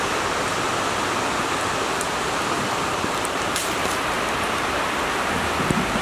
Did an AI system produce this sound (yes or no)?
no